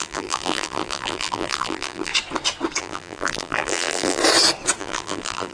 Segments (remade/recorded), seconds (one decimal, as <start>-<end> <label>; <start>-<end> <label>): 0.0-2.1 remade; 2.1-2.8 recorded; 2.8-4.2 remade; 4.2-4.8 recorded; 4.8-5.5 remade